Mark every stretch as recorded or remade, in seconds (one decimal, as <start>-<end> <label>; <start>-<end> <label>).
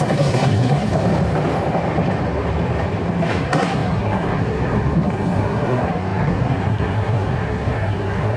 0.0-0.9 remade; 0.9-3.3 recorded; 3.3-8.4 remade